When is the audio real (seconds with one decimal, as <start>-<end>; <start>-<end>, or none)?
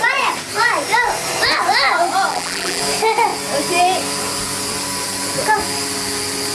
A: 0.0-2.3; 2.8-6.5